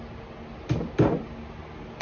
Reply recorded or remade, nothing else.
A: recorded